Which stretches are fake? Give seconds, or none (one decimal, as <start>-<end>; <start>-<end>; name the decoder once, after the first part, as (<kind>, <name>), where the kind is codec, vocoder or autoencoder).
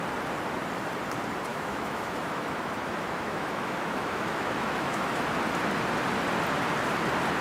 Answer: 1.5-5.1 (autoencoder, DAC-VAE)